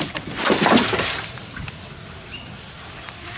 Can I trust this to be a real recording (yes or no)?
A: no